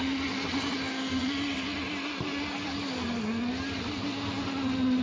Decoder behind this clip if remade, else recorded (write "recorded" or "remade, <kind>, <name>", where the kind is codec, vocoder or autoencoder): recorded